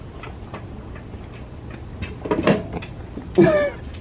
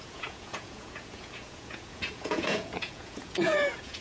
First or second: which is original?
first